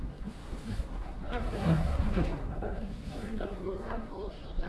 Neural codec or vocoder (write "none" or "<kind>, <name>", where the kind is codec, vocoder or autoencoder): codec, SNAC